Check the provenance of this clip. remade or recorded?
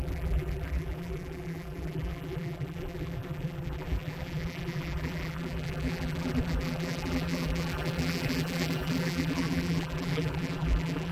remade